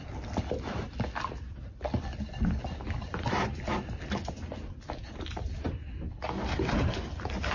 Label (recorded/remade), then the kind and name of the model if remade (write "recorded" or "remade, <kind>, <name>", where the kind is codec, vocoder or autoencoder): recorded